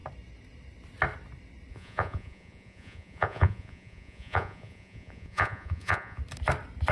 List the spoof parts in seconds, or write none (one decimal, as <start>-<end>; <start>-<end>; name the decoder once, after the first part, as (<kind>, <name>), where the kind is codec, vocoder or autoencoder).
1.7-6.2 (vocoder, Vocos)